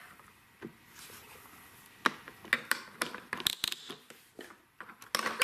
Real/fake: real